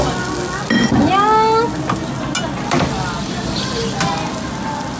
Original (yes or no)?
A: yes